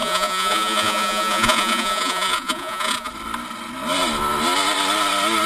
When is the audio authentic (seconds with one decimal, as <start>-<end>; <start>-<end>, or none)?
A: 3.1-5.5